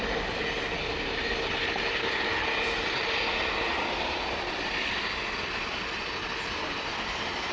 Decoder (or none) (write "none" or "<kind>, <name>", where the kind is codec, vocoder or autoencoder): none